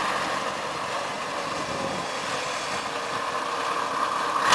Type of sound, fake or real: real